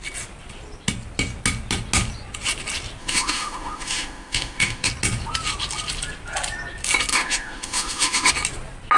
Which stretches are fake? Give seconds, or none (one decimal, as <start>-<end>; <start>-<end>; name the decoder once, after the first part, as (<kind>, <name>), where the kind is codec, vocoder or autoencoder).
3.0-4.9 (autoencoder, DAC-VAE); 7.1-8.3